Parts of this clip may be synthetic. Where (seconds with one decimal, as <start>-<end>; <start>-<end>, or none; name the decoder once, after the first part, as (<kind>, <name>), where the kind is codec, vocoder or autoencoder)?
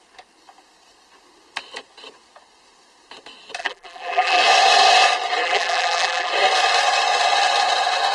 3.6-4.4 (vocoder, BigVGAN v2); 5.4-6.3